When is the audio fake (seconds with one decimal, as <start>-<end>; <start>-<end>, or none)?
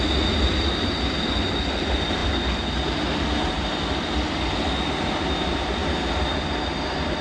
none